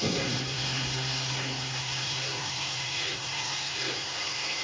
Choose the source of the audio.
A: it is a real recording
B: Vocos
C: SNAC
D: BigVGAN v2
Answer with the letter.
C